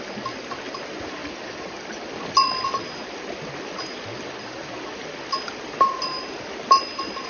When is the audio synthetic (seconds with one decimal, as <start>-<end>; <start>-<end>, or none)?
1.2-2.0